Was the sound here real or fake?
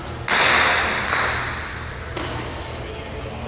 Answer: real